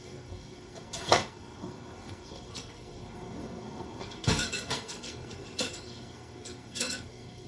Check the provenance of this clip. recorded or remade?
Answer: remade